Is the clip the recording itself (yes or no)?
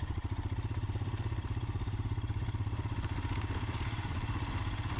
no